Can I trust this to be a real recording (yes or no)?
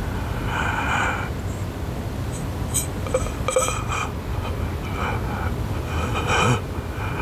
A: yes